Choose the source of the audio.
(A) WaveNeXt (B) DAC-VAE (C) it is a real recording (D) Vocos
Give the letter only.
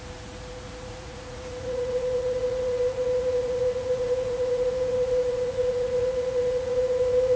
D